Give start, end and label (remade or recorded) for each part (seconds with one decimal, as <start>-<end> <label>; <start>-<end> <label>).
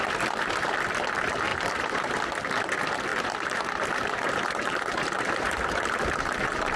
0.0-1.5 recorded; 1.5-2.2 remade; 2.2-3.1 recorded; 3.1-6.8 remade